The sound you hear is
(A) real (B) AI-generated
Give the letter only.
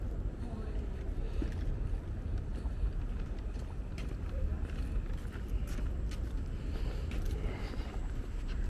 A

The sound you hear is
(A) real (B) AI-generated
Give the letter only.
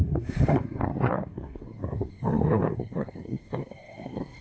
B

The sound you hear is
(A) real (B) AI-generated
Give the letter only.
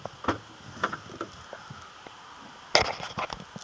A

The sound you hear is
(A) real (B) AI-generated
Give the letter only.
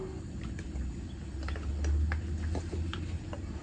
A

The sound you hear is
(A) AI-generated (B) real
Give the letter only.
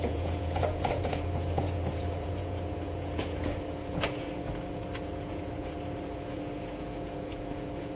A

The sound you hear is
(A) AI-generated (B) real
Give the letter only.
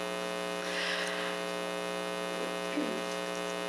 B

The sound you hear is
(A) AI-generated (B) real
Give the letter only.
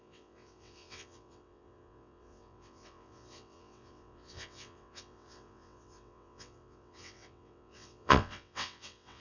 A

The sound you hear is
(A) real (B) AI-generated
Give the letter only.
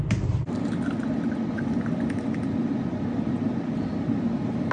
A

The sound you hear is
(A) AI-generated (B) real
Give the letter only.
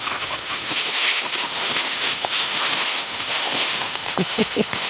A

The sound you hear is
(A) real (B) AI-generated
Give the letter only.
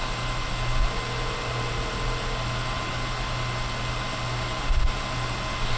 A